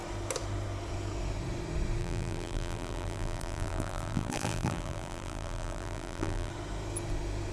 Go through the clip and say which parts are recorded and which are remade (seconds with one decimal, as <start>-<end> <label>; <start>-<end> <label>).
0.0-2.0 recorded; 2.0-6.5 remade; 6.5-7.5 recorded